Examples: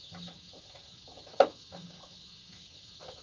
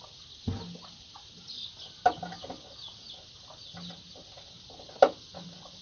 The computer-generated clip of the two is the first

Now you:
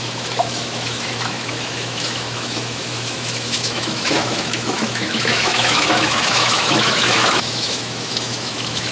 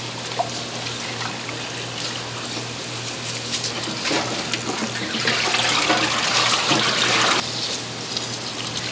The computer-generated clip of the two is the first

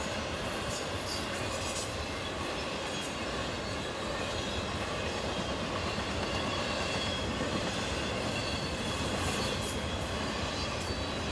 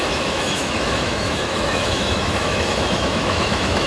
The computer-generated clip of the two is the second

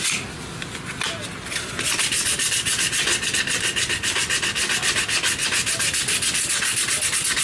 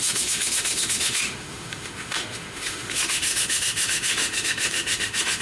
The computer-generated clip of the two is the second